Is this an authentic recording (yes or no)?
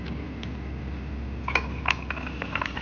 yes